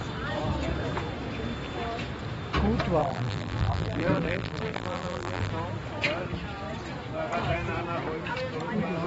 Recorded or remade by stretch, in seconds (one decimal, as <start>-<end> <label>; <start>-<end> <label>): 0.0-3.0 recorded; 3.0-5.5 remade; 5.5-9.1 recorded